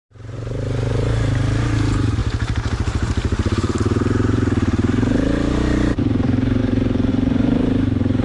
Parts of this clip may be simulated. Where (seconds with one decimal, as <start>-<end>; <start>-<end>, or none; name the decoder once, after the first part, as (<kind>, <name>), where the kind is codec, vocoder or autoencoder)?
0.0-8.2 (vocoder, BigVGAN v2)